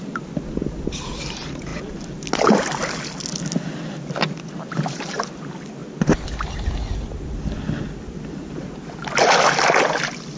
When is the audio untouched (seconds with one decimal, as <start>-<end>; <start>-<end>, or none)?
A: 0.0-10.4